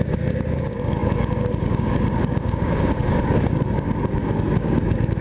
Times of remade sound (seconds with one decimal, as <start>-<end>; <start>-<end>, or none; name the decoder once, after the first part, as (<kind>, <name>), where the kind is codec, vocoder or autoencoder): 0.0-5.2 (codec, DAC)